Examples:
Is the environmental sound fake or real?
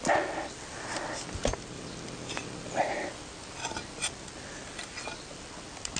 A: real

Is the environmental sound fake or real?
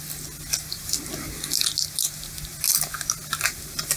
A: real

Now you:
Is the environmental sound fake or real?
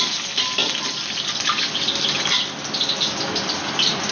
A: real